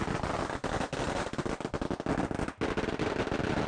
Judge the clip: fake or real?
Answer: real